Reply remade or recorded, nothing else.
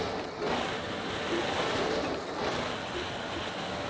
recorded